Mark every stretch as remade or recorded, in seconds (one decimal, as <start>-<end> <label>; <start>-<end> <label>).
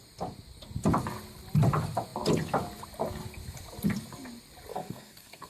0.0-4.7 recorded; 4.7-5.5 remade